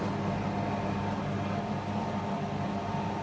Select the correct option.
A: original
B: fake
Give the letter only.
A